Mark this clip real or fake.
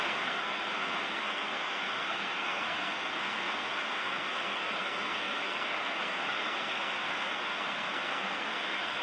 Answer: fake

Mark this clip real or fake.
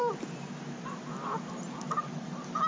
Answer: real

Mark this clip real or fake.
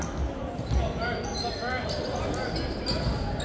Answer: real